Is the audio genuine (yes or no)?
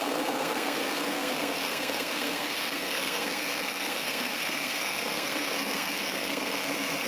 no